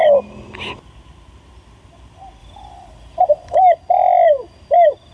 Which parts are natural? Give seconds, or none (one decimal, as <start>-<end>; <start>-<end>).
0.0-2.4; 3.6-5.1